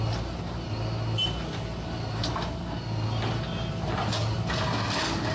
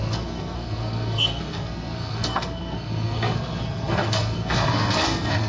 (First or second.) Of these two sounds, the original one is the first